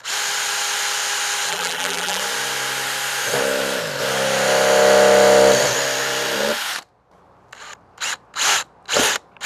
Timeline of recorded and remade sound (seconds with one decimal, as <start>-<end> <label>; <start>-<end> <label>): 0.0-1.5 recorded; 1.5-2.2 remade; 2.2-9.5 recorded